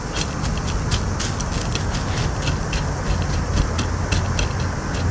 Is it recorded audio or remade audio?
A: recorded